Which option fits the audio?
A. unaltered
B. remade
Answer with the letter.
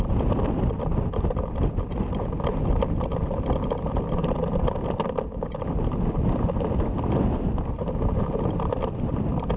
A